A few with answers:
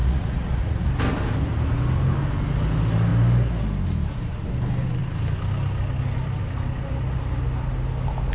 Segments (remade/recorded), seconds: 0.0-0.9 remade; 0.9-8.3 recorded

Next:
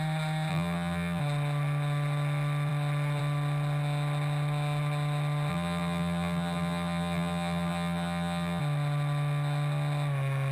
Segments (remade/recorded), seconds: 0.0-0.5 recorded; 0.5-1.2 remade; 1.2-5.5 recorded; 5.5-8.6 remade; 8.6-10.5 recorded

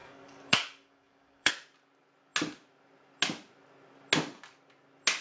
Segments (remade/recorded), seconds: 0.0-1.5 remade; 1.5-5.2 recorded

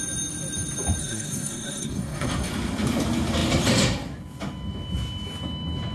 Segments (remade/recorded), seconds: 0.0-1.0 recorded; 1.0-2.5 remade; 2.5-5.9 recorded

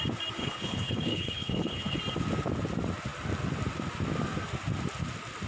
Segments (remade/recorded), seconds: 0.0-0.4 recorded; 0.4-2.0 remade; 2.0-5.5 recorded

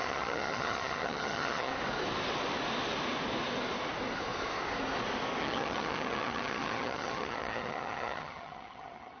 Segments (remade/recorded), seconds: 0.0-1.7 remade; 1.7-5.4 recorded; 5.4-9.2 remade

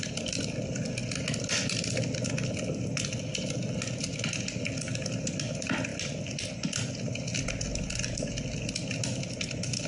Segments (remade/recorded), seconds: 0.0-9.9 recorded

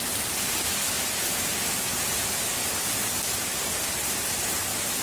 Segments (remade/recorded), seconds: 0.0-2.5 recorded; 2.5-4.2 remade; 4.2-5.0 recorded